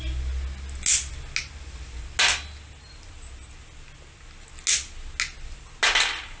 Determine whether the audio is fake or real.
real